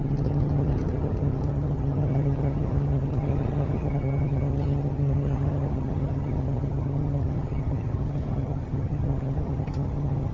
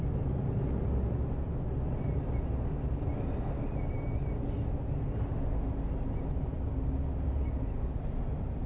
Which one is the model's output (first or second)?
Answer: first